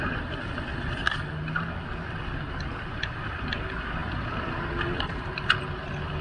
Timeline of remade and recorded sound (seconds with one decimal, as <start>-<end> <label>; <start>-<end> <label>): 0.0-6.2 recorded